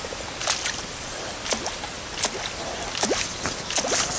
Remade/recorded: recorded